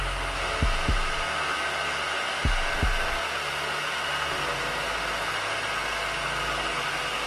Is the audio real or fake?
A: real